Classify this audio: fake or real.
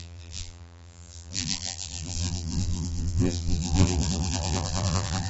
fake